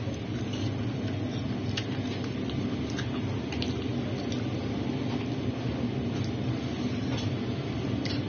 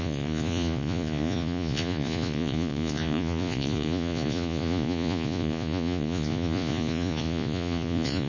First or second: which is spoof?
second